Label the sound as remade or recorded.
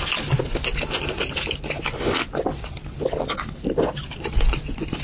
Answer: recorded